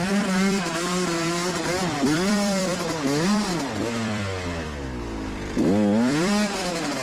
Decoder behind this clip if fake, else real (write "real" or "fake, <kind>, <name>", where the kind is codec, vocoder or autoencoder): fake, vocoder, BigVGAN v2